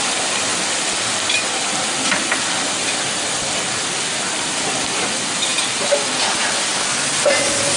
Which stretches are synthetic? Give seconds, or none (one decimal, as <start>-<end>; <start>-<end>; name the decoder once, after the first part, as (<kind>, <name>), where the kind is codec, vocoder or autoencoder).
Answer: none